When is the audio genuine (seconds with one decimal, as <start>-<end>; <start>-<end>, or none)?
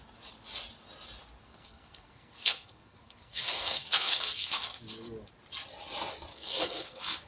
0.0-1.4; 4.8-6.3